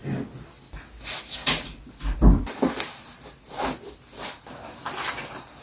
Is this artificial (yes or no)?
no